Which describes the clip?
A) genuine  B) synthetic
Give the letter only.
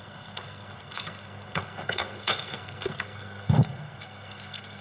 B